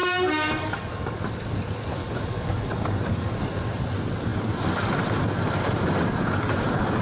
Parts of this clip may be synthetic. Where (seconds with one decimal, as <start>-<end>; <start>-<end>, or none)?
0.0-1.2; 2.0-3.4